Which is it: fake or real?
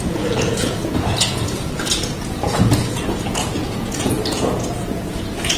fake